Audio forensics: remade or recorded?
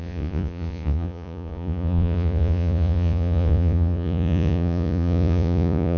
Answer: remade